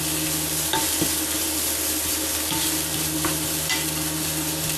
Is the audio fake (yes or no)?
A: no